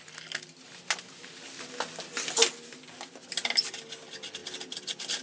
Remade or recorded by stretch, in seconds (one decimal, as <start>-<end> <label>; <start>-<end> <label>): 0.0-5.2 recorded